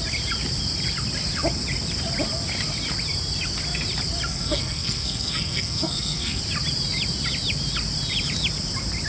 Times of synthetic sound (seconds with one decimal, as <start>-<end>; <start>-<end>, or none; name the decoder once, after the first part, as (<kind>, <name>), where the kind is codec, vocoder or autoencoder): 4.3-6.4 (codec, SNAC)